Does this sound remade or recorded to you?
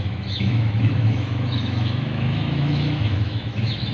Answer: remade